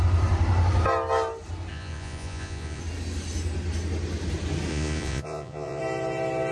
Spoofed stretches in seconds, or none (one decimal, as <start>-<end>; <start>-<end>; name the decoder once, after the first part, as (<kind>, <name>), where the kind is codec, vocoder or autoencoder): 1.7-2.8 (vocoder, Vocos); 4.7-5.8